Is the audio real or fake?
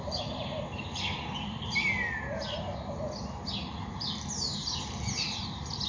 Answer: real